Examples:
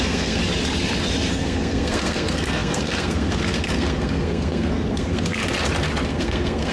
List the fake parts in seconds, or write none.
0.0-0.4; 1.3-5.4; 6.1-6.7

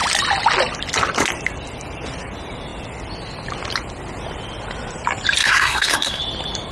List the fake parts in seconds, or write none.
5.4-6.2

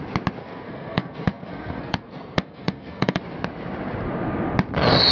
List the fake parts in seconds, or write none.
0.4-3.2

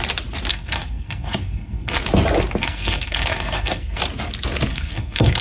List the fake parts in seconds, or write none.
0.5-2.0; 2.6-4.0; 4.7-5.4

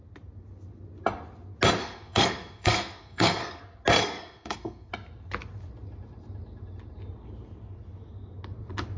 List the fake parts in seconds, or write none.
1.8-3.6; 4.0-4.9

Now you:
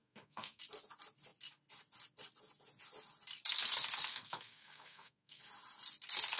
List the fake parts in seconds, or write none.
0.0-0.6; 4.1-5.4

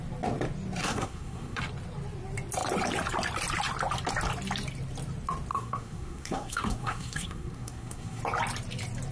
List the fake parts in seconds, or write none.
0.8-1.6; 5.5-8.2